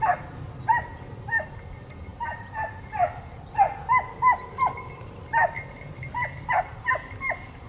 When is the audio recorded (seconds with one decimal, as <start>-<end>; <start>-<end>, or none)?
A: 0.0-7.7